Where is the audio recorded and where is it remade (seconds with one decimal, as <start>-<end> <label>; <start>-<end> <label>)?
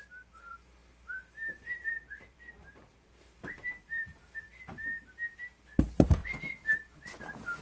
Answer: 0.0-6.2 remade; 6.2-7.6 recorded